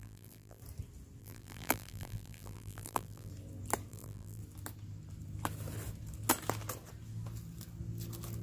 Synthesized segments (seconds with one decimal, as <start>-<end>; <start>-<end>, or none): 0.0-0.6; 1.2-3.3; 3.9-4.4